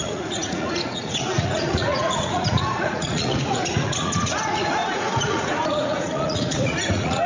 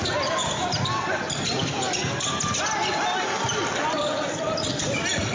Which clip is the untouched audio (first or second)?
second